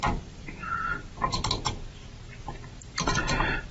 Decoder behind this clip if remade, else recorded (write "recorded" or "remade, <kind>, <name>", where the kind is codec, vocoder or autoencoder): remade, vocoder, BigVGAN v2